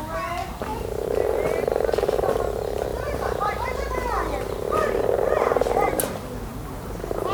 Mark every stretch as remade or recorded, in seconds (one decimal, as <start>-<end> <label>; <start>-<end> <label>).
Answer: 0.0-0.7 recorded; 0.7-2.3 remade; 2.3-6.5 recorded; 6.5-7.3 remade